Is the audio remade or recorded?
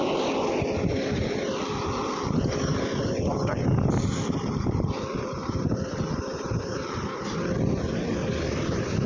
recorded